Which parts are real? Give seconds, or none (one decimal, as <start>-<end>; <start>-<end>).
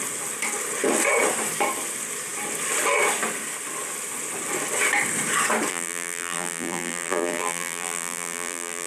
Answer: 0.0-5.7